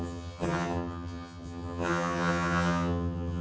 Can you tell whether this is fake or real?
fake